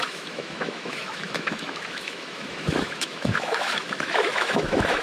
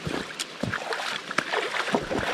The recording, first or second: second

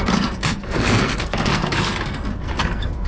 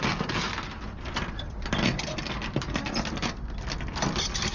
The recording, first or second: second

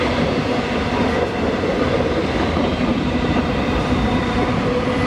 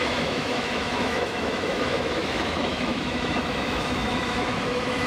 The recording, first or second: first